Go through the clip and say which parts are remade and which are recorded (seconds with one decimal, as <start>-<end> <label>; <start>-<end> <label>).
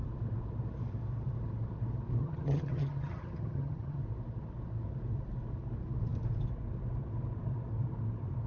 0.0-2.2 recorded; 2.2-4.0 remade; 4.0-8.5 recorded